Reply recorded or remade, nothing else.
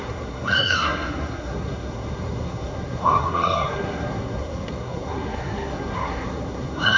remade